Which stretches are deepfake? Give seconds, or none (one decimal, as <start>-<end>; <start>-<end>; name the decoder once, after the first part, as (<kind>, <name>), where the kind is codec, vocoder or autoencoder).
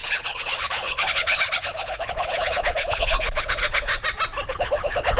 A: 0.0-3.9 (codec, HILCodec); 4.5-5.2